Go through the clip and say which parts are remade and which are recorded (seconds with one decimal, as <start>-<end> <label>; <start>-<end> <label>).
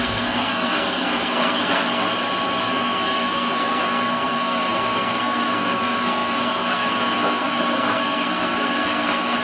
0.0-2.1 remade; 2.1-2.6 recorded; 2.6-9.4 remade